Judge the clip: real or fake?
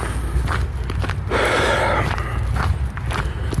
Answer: real